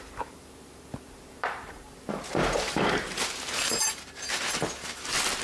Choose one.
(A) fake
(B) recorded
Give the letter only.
A